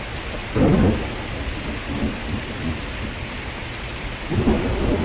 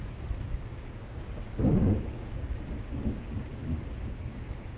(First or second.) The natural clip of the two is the first